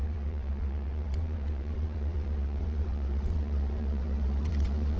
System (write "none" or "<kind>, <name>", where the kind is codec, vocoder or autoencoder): vocoder, WaveNeXt